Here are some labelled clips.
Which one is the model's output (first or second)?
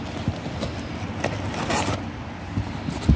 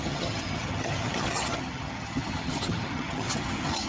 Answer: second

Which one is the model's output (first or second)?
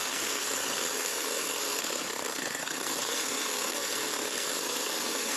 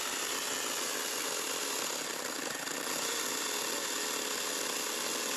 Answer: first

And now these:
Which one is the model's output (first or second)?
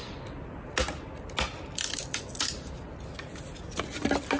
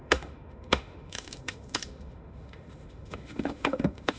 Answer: second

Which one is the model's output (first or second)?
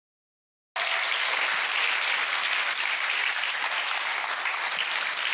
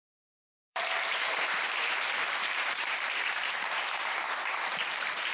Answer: second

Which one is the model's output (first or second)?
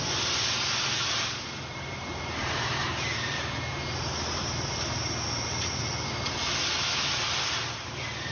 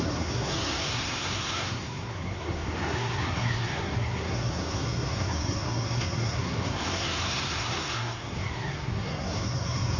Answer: second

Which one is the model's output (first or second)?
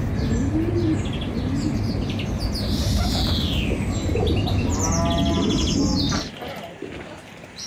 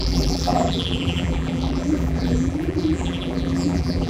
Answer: second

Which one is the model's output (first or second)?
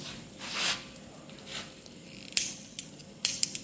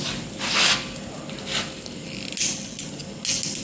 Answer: first